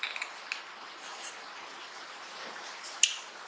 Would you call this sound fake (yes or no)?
no